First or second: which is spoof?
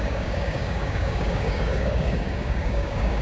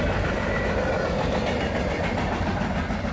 first